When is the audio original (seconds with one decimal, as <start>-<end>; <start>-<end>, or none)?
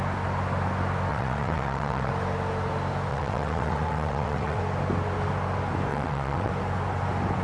0.0-1.1; 2.1-3.1; 4.6-5.9; 6.5-7.4